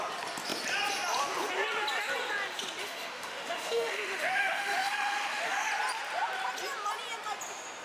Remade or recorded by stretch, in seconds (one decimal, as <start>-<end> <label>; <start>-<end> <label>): 0.0-2.8 recorded; 2.8-5.7 remade; 5.7-7.8 recorded